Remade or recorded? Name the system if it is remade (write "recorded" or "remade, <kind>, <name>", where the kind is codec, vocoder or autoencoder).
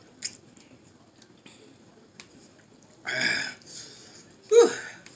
recorded